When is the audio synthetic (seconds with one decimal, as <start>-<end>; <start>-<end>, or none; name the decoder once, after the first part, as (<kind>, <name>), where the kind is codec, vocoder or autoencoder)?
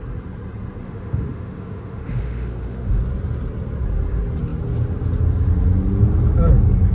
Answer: 0.8-3.0 (autoencoder, DAC-VAE)